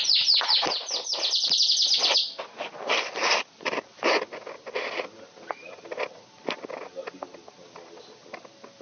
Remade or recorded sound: recorded